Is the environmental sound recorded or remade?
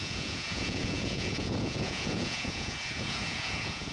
remade